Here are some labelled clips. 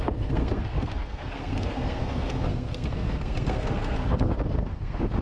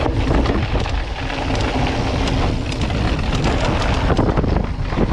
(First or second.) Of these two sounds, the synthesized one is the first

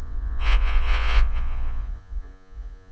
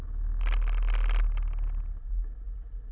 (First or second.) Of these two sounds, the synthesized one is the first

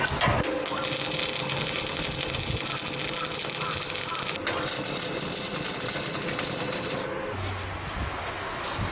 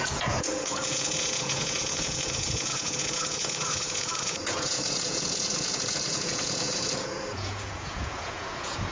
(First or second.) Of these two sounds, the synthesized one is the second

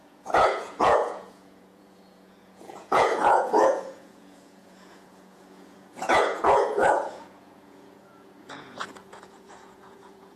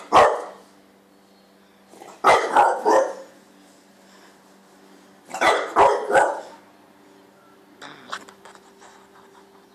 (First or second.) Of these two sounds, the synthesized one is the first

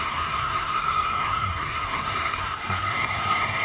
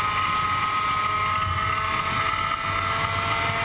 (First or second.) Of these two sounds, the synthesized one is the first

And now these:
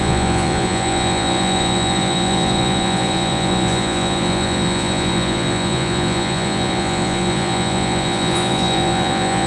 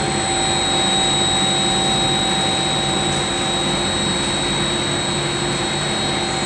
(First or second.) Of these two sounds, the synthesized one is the first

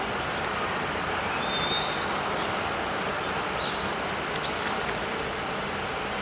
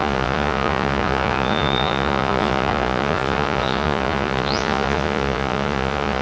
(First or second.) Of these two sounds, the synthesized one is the second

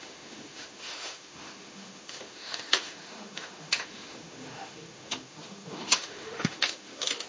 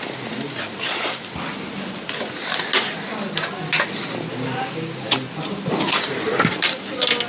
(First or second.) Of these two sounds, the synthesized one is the first